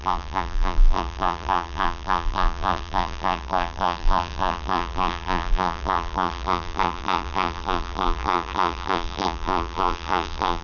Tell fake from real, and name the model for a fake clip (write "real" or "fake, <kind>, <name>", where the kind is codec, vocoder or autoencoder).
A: fake, vocoder, BigVGAN v2